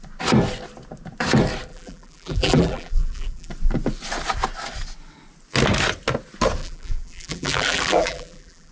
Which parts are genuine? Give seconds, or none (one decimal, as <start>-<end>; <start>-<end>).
0.0-1.7; 3.5-6.6